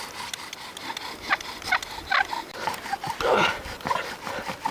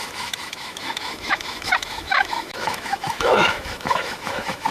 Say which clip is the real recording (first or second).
first